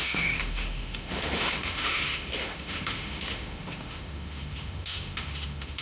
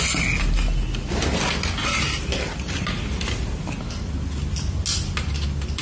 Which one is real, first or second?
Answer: second